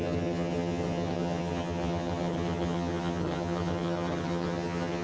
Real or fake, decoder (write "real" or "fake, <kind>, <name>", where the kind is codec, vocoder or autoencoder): fake, vocoder, HiFi-GAN